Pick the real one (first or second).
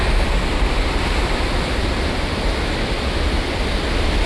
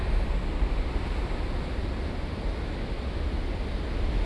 second